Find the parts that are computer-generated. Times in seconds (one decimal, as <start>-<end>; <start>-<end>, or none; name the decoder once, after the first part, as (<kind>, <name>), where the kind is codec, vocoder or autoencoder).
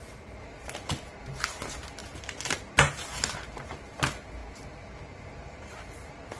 0.0-6.4 (vocoder, BigVGAN v2)